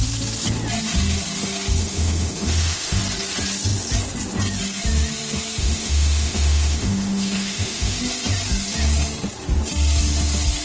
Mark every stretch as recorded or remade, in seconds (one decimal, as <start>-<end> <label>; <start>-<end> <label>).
0.0-1.8 recorded; 1.8-3.0 remade; 3.0-5.6 recorded; 5.6-8.0 remade; 8.0-10.6 recorded